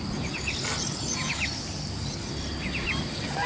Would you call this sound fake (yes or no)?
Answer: no